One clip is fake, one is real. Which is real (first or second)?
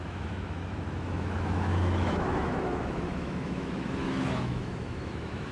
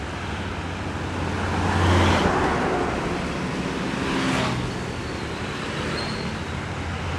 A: second